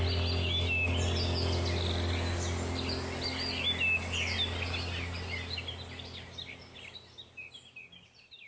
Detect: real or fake real